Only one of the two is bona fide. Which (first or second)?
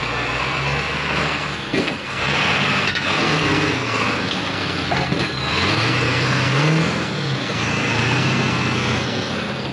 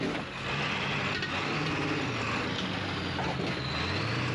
second